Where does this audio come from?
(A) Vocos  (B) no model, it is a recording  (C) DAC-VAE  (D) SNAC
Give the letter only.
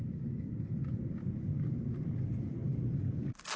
B